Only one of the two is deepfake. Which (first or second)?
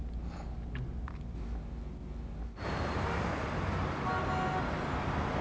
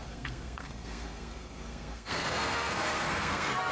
second